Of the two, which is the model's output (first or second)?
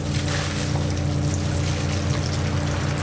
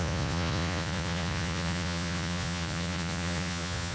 second